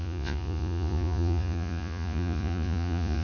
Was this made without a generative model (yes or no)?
no